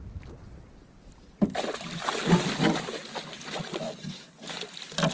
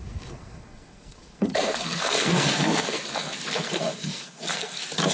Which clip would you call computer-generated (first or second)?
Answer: second